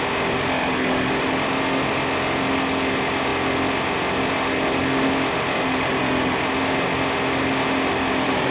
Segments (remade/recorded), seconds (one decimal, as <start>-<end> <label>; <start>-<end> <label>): 0.0-8.5 recorded